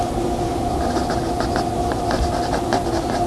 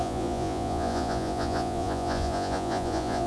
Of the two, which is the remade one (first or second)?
second